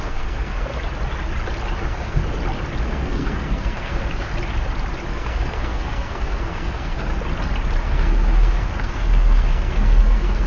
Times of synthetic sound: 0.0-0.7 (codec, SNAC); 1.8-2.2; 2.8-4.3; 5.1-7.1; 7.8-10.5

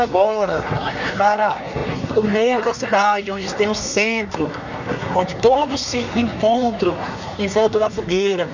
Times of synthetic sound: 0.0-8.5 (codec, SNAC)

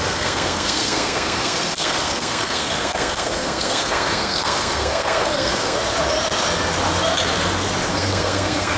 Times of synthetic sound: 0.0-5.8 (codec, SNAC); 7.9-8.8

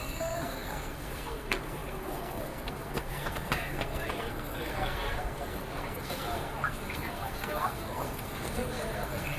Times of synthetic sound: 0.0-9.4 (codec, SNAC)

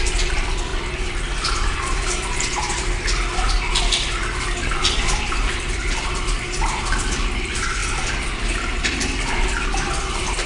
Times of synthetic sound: none

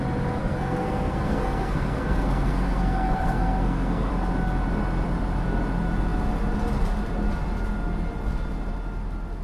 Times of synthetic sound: 0.4-4.1 (codec, SNAC)